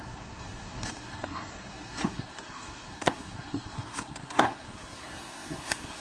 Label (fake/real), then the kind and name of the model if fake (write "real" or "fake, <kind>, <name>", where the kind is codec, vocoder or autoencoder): fake, codec, SNAC